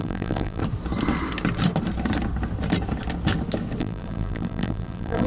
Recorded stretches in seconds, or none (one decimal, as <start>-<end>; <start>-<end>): 0.6-3.8